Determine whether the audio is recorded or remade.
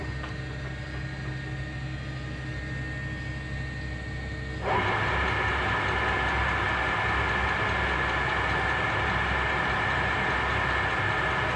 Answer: recorded